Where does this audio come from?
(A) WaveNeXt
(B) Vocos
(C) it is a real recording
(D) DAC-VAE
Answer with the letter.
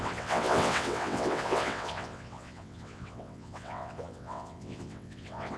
A